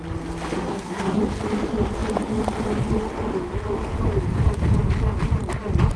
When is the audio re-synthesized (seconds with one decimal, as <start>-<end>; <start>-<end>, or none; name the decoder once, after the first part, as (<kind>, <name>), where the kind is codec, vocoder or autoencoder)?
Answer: 0.7-1.2 (codec, SNAC)